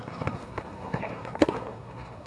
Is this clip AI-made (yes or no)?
yes